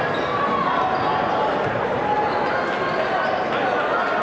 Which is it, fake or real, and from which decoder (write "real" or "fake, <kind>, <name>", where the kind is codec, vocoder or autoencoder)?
real